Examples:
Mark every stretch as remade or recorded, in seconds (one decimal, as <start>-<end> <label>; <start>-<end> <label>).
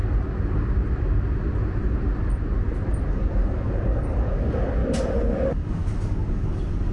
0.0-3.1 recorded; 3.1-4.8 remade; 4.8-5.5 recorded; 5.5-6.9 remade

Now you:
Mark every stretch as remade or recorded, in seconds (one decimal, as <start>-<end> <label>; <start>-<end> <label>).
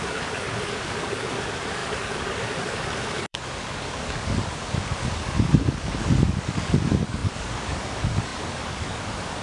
0.0-9.4 remade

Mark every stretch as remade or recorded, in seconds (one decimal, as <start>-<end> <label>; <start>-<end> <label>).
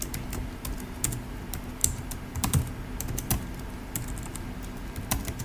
0.0-5.4 recorded